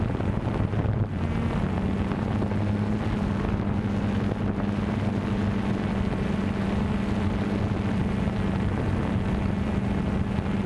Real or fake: real